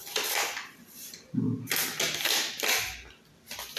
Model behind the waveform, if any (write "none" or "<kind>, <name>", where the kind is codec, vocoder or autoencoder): none